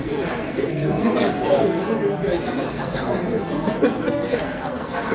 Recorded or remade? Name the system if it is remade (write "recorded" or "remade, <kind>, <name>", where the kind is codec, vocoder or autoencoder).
remade, codec, SNAC